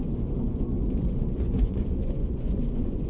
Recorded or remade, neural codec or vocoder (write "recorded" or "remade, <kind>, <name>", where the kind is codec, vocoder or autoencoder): remade, vocoder, Vocos